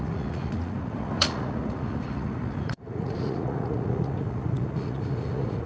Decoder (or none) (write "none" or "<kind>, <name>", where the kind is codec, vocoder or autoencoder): vocoder, Vocos